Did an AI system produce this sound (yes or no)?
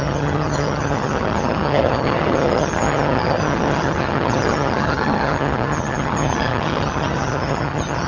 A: yes